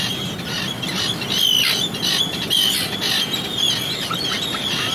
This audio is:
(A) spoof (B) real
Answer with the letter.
B